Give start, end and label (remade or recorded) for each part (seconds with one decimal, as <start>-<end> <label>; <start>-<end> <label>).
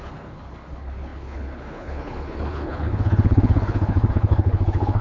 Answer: 0.0-5.0 remade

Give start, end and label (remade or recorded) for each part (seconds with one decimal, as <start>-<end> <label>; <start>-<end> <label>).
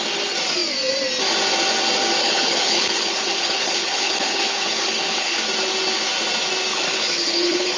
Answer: 0.0-2.2 recorded; 2.2-5.4 remade; 5.4-6.7 recorded; 6.7-7.8 remade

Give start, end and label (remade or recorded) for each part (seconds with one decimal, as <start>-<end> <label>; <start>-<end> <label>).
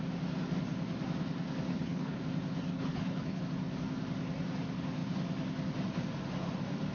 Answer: 0.0-1.7 recorded; 1.7-2.2 remade; 2.2-2.7 recorded; 2.7-3.4 remade; 3.4-6.9 recorded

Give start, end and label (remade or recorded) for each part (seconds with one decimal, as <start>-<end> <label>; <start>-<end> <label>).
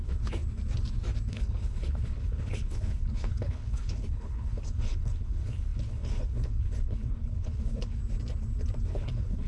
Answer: 0.0-0.4 remade; 0.4-1.3 recorded; 1.3-8.0 remade; 8.0-8.9 recorded; 8.9-9.5 remade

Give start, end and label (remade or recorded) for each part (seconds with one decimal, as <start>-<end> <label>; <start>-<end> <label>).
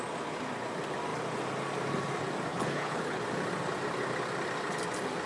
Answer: 0.0-2.5 recorded; 2.5-3.2 remade; 3.2-5.3 recorded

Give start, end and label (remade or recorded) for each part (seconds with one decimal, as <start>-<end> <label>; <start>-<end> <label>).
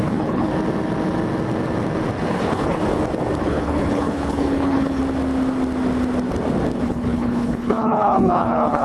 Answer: 0.0-0.5 remade; 0.5-2.3 recorded; 2.3-2.8 remade; 2.8-3.4 recorded; 3.4-5.0 remade; 5.0-6.8 recorded; 6.8-8.8 remade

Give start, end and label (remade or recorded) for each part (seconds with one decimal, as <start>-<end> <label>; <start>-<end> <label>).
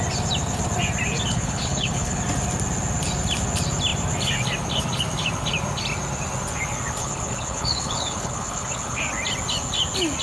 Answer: 0.0-1.3 recorded; 1.3-2.2 remade; 2.2-7.0 recorded; 7.0-9.0 remade; 9.0-10.2 recorded